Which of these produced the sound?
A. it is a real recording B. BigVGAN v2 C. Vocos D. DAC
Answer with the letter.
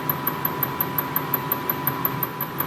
A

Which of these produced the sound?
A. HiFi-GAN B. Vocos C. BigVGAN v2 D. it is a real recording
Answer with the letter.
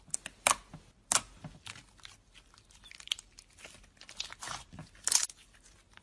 D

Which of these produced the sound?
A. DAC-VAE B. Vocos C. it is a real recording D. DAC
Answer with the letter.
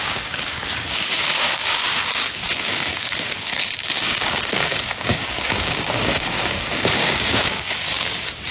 D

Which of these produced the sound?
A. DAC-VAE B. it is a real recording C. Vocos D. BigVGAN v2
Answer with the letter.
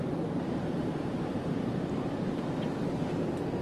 D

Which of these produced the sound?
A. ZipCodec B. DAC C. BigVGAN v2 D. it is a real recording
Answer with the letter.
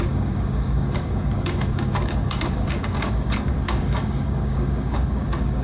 B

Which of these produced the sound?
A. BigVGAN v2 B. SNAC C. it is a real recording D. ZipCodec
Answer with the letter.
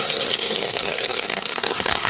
B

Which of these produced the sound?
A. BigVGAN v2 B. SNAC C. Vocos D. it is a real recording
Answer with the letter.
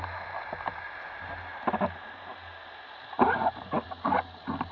D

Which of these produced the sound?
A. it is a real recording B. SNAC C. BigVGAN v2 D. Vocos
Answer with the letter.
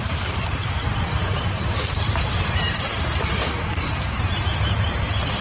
C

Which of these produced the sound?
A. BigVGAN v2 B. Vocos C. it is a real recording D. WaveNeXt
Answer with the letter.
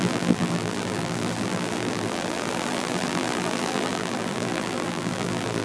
A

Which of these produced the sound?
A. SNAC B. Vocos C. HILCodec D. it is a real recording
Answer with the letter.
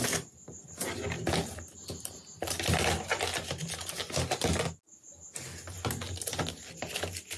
D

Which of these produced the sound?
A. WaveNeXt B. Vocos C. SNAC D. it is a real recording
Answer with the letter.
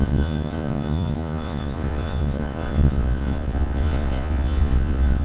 B